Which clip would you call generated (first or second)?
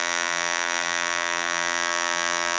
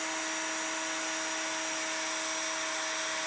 first